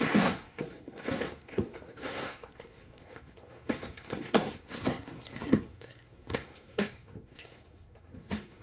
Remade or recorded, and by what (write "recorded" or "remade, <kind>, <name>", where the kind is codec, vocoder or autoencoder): remade, codec, SNAC